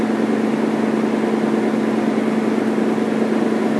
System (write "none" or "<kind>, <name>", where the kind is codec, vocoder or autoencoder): none